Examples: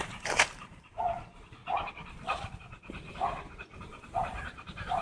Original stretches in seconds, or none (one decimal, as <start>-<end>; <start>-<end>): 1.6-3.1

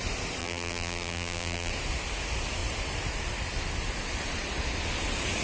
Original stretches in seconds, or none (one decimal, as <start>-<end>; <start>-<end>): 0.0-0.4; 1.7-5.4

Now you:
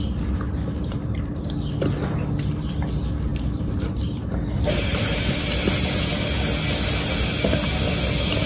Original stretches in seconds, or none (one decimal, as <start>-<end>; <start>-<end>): 1.4-3.3; 5.4-8.5

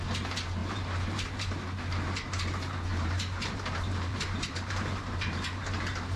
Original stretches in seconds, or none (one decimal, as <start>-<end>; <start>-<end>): 0.0-0.6; 1.5-2.9; 5.6-6.2

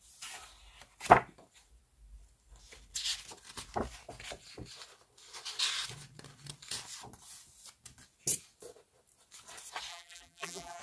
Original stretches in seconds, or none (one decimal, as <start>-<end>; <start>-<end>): 0.0-9.9